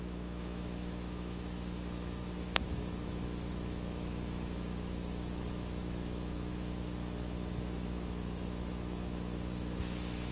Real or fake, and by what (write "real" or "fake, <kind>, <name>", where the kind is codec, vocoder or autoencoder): fake, autoencoder, DAC-VAE